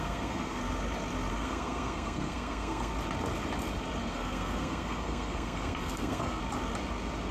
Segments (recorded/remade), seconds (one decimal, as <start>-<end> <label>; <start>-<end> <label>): 0.0-0.6 remade; 0.6-1.3 recorded; 1.3-2.9 remade; 2.9-4.1 recorded; 4.1-6.4 remade; 6.4-7.3 recorded